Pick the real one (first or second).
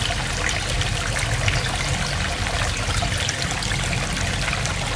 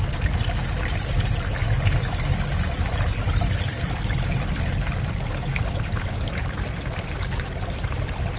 first